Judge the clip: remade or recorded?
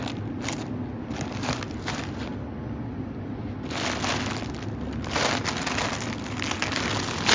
recorded